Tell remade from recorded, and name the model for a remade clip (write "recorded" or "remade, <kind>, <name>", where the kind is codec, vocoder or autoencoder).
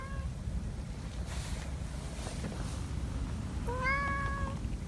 recorded